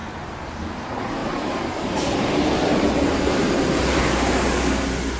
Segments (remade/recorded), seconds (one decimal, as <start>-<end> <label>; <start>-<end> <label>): 0.0-0.5 remade; 0.5-1.2 recorded; 1.2-4.0 remade; 4.0-5.2 recorded